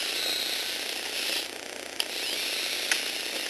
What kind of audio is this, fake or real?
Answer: real